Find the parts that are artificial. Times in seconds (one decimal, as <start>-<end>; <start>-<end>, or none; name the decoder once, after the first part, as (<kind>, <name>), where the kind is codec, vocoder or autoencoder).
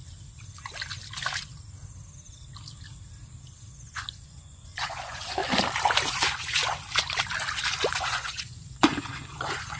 3.7-5.4 (vocoder, Vocos); 6.1-6.6; 7.8-9.8